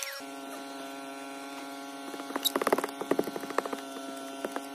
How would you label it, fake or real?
real